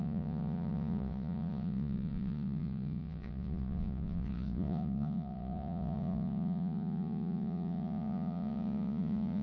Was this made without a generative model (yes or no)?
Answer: no